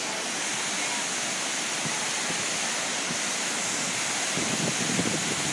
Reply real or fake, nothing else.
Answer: real